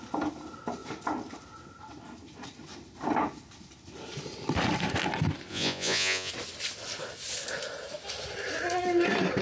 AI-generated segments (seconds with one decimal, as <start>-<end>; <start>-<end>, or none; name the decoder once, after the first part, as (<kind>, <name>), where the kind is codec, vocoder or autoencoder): 5.5-6.3 (vocoder, Vocos)